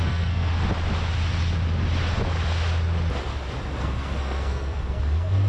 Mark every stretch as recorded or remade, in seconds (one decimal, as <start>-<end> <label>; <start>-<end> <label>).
0.0-0.5 remade; 0.5-3.8 recorded; 3.8-5.5 remade